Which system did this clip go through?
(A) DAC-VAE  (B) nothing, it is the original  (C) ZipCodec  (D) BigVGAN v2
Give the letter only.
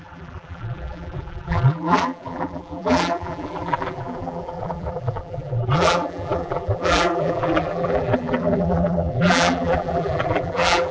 D